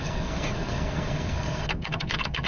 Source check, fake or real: fake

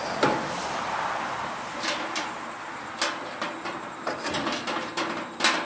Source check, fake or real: real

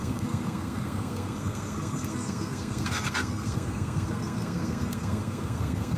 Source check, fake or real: fake